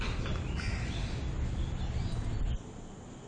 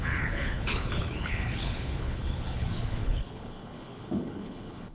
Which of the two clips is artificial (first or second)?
second